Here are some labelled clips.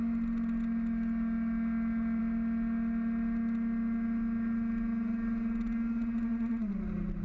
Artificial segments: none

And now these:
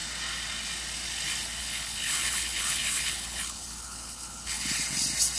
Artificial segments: 1.6-4.8 (codec, HILCodec)